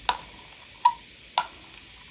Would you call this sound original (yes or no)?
yes